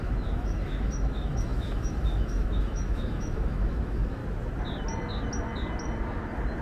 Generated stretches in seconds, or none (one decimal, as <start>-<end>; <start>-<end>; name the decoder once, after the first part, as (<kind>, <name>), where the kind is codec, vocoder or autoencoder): 0.0-4.2 (autoencoder, DAC-VAE)